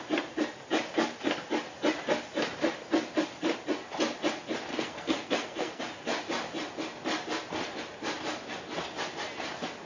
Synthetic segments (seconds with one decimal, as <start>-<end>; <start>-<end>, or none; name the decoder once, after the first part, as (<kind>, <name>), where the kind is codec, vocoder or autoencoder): 4.7-5.8 (codec, SNAC)

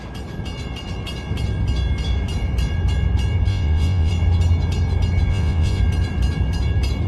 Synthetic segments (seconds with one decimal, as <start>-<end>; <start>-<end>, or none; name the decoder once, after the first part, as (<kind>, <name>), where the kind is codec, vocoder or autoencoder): 3.5-4.1 (vocoder, Vocos); 5.3-5.8

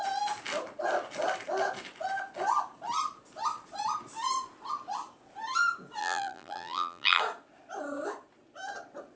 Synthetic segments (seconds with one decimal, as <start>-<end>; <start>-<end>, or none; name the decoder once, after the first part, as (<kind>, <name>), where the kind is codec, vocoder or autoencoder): 6.0-7.2 (vocoder, BigVGAN v2)

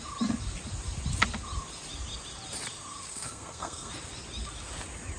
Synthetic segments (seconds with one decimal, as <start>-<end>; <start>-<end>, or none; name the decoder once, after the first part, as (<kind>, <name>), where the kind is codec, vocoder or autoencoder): 3.1-3.9 (codec, SNAC)

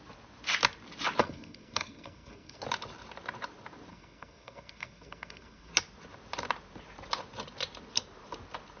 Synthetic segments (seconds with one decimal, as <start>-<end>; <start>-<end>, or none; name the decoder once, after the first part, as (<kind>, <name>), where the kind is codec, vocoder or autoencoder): 1.2-2.6 (codec, SNAC); 3.9-5.7

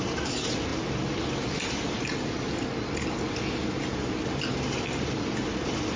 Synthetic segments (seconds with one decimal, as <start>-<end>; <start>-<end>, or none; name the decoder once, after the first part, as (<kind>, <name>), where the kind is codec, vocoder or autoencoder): none